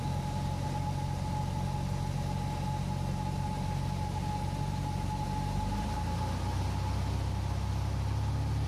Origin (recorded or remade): recorded